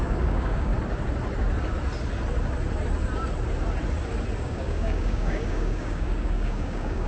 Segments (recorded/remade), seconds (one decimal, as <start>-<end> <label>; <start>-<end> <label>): 0.0-0.7 remade; 0.7-4.4 recorded; 4.4-7.1 remade